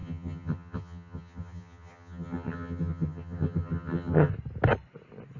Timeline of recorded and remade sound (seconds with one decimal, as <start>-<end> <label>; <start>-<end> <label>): 0.0-4.3 remade; 4.3-5.4 recorded